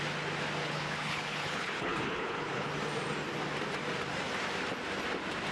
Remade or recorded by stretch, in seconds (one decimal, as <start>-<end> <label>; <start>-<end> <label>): 0.0-0.6 recorded; 0.6-2.7 remade; 2.7-5.5 recorded